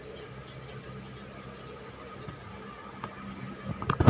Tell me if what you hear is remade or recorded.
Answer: recorded